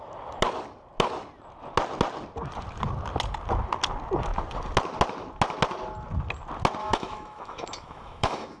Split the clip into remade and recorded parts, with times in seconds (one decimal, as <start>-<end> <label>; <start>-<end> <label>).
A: 0.0-6.8 recorded; 6.8-8.6 remade